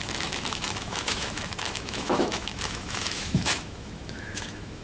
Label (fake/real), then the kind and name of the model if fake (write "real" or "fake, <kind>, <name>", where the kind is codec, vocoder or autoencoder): fake, autoencoder, DAC-VAE